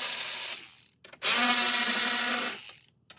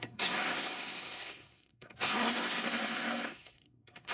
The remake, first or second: second